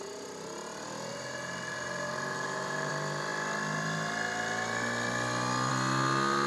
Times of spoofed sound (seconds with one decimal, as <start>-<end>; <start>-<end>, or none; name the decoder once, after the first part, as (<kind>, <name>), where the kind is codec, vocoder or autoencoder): 1.1-2.9 (vocoder, BigVGAN v2)